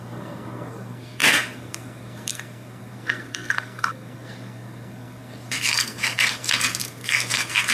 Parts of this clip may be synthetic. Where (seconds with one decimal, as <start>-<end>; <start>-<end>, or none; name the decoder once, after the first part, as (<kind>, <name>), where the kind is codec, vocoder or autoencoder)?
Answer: 0.0-7.7 (codec, SNAC)